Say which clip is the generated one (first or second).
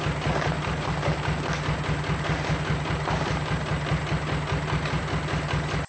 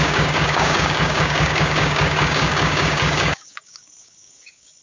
second